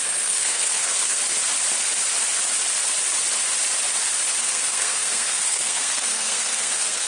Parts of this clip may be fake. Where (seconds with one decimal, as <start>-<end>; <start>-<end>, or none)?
0.0-1.2; 4.4-7.1